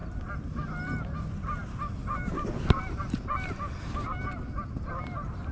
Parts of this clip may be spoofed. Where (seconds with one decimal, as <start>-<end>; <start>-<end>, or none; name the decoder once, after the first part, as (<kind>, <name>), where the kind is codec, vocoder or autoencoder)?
none